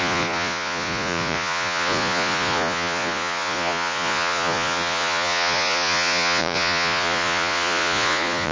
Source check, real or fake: fake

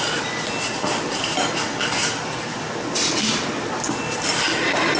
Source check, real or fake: real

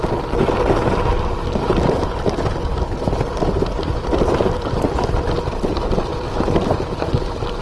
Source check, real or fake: real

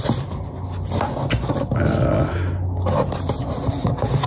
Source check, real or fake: real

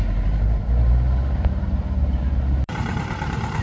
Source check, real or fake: fake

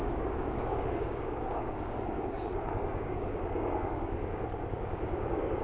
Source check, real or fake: fake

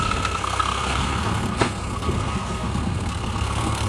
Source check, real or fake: fake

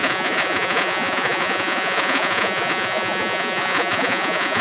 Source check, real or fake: fake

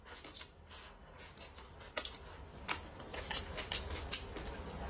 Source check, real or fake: real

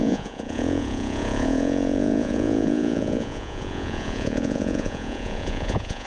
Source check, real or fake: fake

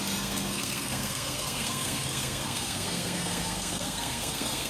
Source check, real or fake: fake